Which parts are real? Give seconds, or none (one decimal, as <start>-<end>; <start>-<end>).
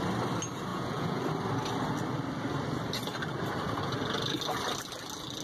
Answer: 0.0-0.7; 1.2-5.4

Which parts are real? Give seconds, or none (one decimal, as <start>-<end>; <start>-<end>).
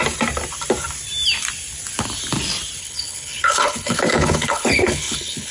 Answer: 0.0-2.8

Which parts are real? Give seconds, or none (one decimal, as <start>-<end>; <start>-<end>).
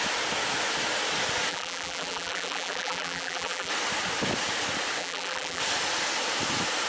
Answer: 0.0-1.5; 3.7-5.0; 5.6-6.9